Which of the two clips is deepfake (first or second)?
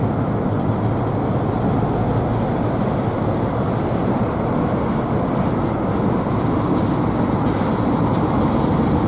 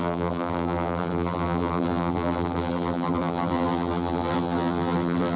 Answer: second